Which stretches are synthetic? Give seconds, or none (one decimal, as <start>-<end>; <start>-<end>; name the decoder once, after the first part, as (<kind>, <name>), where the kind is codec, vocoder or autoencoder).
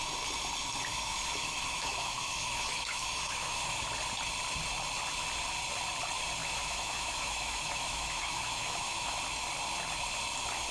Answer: 0.9-3.8 (autoencoder, DAC-VAE); 6.4-9.2